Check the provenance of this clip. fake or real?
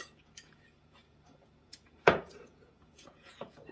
fake